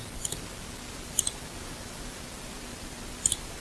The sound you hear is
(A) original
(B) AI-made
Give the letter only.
A